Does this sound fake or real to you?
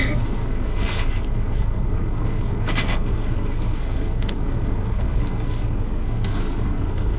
fake